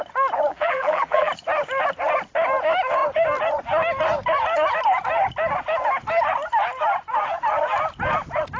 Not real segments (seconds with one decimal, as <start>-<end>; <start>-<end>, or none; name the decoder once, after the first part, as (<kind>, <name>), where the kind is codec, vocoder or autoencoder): 0.5-1.3 (vocoder, BigVGAN v2)

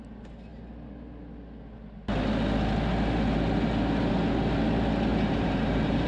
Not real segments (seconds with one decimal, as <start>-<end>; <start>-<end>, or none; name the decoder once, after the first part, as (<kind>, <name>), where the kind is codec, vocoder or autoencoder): 5.1-6.1 (vocoder, BigVGAN v2)

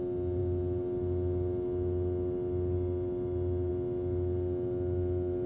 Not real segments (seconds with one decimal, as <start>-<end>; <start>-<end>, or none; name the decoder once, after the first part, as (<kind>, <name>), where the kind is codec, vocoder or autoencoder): none

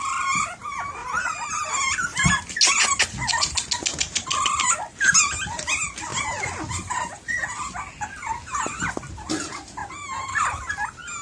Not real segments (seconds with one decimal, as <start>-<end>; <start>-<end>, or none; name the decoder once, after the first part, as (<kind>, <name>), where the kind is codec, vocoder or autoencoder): 1.0-1.5 (vocoder, BigVGAN v2)

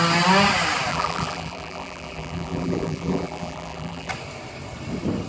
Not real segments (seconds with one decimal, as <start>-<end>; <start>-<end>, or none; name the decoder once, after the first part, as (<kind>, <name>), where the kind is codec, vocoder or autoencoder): 0.9-4.1 (vocoder, BigVGAN v2)

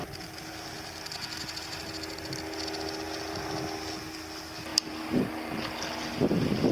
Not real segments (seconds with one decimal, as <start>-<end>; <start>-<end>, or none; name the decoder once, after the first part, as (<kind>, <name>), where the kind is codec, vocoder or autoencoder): 4.7-5.3 (vocoder, BigVGAN v2)